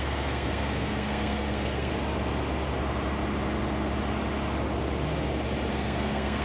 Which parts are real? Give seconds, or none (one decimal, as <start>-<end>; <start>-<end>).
1.9-5.7